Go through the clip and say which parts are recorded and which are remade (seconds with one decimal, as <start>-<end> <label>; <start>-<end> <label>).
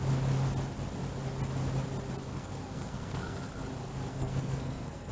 0.0-2.3 recorded; 2.3-3.5 remade; 3.5-4.1 recorded; 4.1-5.1 remade